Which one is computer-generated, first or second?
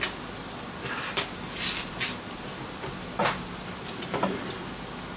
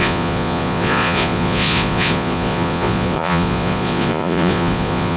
second